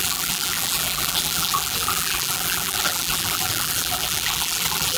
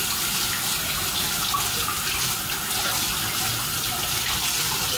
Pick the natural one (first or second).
second